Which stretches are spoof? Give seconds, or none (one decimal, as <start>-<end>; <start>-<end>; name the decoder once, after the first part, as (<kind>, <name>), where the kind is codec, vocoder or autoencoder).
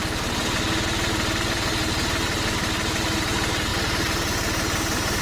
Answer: 3.7-5.2 (vocoder, BigVGAN v2)